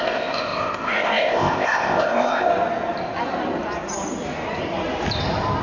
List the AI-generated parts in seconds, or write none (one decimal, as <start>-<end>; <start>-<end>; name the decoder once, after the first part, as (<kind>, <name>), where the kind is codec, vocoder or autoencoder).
0.0-2.5 (codec, ZipCodec)